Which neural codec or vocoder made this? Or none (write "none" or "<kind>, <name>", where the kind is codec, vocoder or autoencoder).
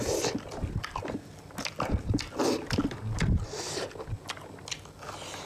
none